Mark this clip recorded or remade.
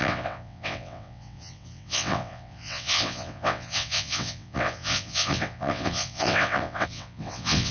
remade